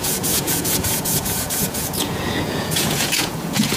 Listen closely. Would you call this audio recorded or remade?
remade